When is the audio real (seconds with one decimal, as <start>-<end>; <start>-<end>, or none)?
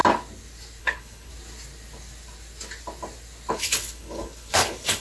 0.0-0.8; 1.3-3.5